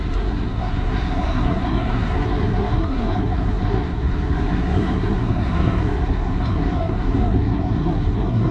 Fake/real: fake